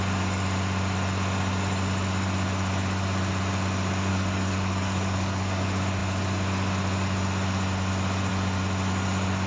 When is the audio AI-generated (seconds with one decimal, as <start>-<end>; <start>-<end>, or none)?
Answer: 4.1-5.6